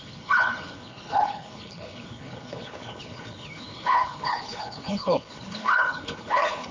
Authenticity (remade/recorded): remade